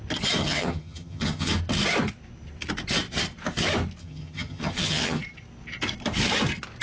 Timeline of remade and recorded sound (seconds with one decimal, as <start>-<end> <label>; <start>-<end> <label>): 0.0-0.4 recorded; 0.4-1.5 remade; 1.5-4.0 recorded; 4.0-5.2 remade; 5.2-6.8 recorded